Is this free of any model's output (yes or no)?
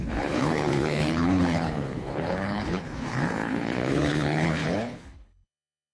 no